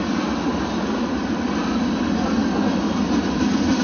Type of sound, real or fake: real